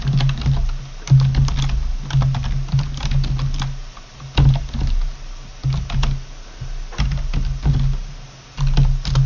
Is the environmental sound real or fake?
real